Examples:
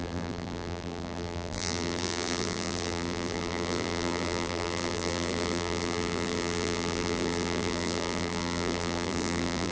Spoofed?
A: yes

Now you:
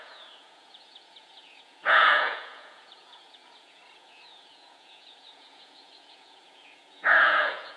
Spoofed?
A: yes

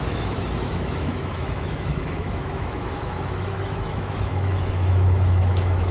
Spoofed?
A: yes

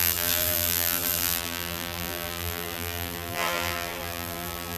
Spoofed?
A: yes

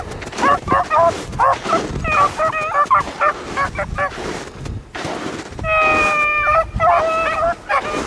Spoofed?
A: no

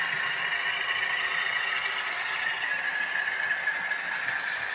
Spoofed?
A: no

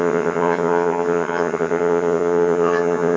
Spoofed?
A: yes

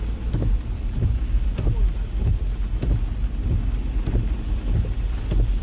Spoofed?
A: no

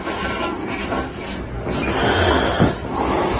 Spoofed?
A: no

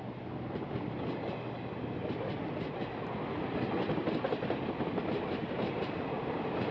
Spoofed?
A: no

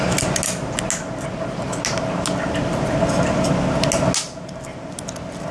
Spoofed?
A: no